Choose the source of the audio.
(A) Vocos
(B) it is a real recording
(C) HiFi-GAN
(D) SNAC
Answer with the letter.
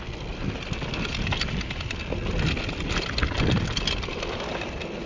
B